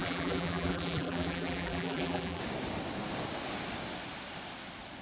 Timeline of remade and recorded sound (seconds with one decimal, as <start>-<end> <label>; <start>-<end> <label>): 0.0-2.4 remade; 2.4-5.0 recorded